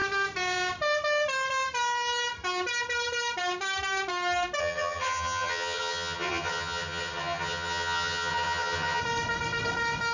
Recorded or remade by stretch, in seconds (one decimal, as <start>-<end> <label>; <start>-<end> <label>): 0.0-4.6 recorded; 4.6-9.0 remade; 9.0-10.1 recorded